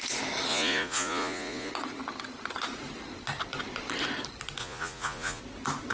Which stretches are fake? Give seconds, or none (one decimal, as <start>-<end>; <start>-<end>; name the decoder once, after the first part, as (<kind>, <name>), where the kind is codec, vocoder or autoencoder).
0.5-1.7 (vocoder, Vocos); 4.6-5.4